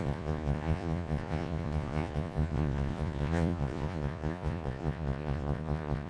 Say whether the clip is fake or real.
fake